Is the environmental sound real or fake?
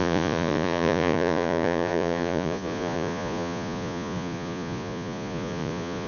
fake